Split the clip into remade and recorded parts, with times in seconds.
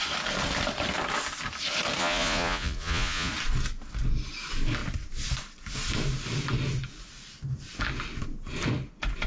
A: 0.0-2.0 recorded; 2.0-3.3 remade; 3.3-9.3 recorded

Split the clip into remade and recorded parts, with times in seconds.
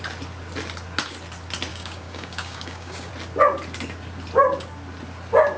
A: 0.0-1.7 recorded; 1.7-3.1 remade; 3.1-5.6 recorded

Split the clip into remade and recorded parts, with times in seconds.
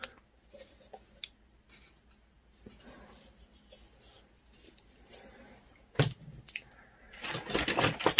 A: 0.0-8.2 recorded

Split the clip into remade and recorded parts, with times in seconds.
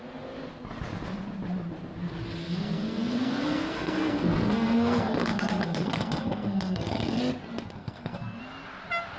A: 0.0-2.4 recorded; 2.4-7.2 remade; 7.2-7.8 recorded; 7.8-8.4 remade; 8.4-9.2 recorded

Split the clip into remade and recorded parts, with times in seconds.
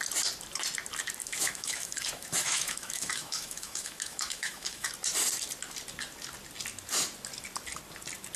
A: 0.0-1.2 recorded; 1.2-4.9 remade; 4.9-8.4 recorded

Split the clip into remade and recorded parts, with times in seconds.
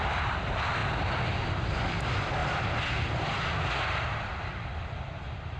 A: 0.0-0.8 recorded; 0.8-1.8 remade; 1.8-5.6 recorded